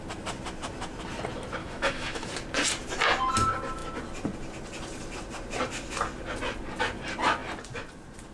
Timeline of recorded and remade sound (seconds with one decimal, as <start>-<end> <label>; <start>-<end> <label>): 0.0-1.6 recorded; 1.6-2.3 remade; 2.3-8.3 recorded